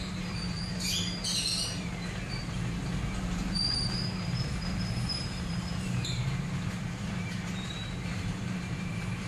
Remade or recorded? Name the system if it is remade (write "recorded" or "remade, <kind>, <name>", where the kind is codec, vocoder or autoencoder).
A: remade, vocoder, BigVGAN v2